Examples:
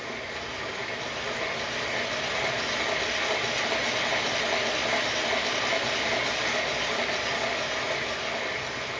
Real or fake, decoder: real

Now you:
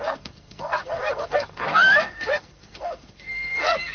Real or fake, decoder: fake, codec, SNAC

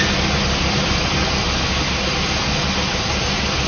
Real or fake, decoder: real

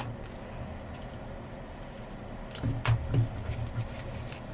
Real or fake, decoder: real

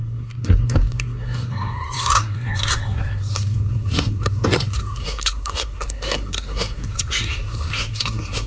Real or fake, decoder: fake, codec, SNAC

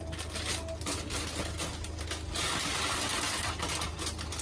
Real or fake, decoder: real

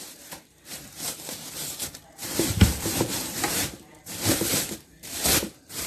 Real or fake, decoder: fake, vocoder, BigVGAN v2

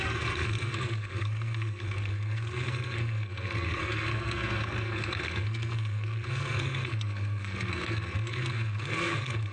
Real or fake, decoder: fake, codec, SNAC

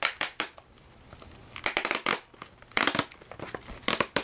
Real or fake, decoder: real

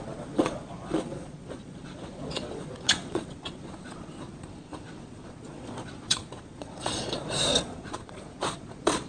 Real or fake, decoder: fake, vocoder, Vocos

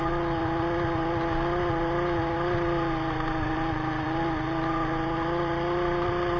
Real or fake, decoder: real